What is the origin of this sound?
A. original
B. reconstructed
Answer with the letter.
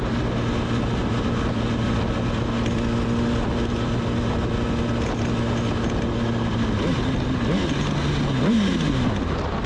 A